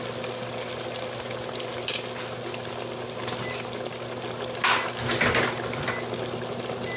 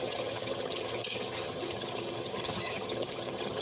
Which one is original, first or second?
first